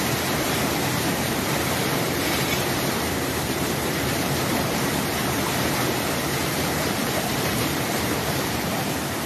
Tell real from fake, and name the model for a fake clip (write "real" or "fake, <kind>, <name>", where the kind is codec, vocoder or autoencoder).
fake, vocoder, BigVGAN v2